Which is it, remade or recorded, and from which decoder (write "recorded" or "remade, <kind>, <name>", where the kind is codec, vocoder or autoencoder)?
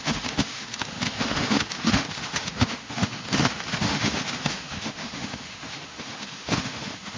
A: remade, autoencoder, DAC-VAE